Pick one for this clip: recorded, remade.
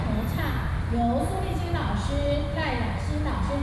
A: recorded